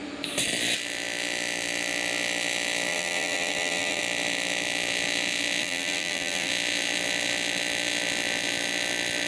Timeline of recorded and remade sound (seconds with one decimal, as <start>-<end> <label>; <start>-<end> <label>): 0.0-2.9 recorded; 2.9-4.0 remade; 4.0-5.6 recorded; 5.6-6.5 remade; 6.5-9.3 recorded